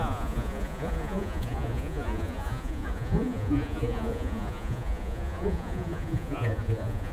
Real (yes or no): no